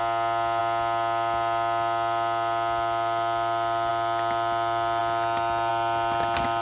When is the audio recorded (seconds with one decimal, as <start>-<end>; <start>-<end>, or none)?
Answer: 0.0-6.6